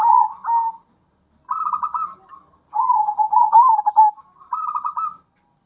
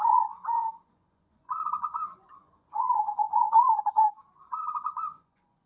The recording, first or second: first